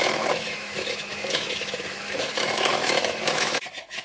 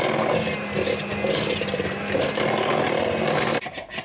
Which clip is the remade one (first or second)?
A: first